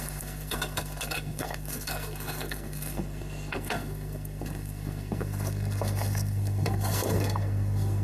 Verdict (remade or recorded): remade